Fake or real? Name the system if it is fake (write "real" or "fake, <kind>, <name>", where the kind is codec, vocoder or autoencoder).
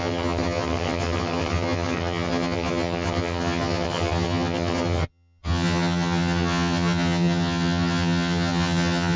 fake, vocoder, HiFi-GAN